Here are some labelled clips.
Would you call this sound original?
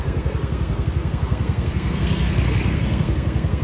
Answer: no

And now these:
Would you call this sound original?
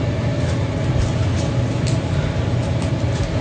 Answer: yes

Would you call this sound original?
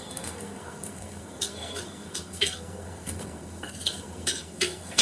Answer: no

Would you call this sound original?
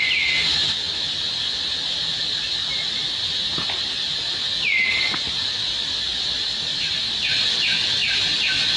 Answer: yes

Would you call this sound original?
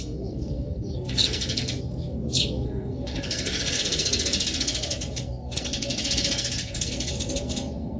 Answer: no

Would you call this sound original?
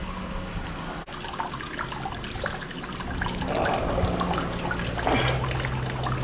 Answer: yes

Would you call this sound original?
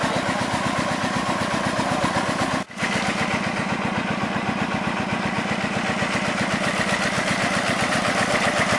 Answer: yes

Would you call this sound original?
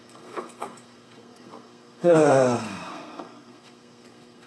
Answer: no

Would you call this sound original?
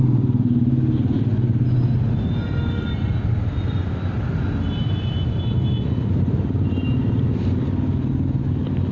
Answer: yes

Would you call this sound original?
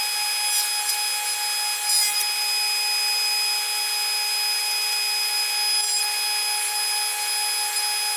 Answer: yes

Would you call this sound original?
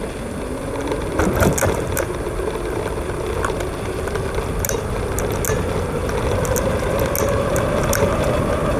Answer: yes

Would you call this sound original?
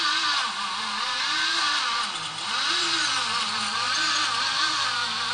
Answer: yes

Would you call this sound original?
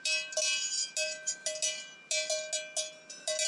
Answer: yes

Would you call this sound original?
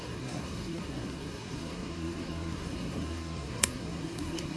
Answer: no